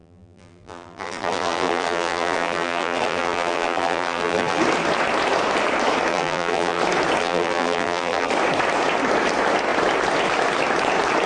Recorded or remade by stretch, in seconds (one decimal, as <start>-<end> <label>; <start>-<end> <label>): 0.0-4.6 remade; 4.6-6.1 recorded; 6.1-6.8 remade; 6.8-7.2 recorded; 7.2-8.3 remade; 8.3-11.3 recorded